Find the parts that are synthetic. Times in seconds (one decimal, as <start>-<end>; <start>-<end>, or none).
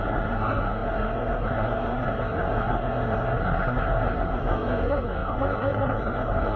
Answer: 0.0-6.6